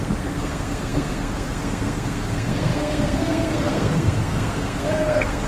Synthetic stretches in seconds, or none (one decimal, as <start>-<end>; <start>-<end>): 0.0-5.5